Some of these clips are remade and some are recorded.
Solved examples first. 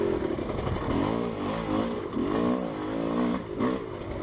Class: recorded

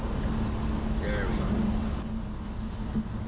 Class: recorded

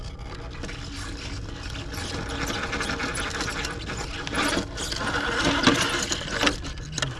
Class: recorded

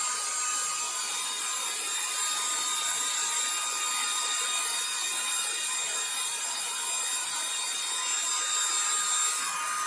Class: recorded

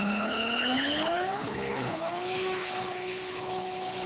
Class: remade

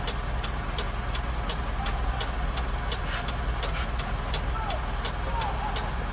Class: recorded